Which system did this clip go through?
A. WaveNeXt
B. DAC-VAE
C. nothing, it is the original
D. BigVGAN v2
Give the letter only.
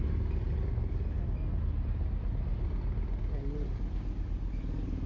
C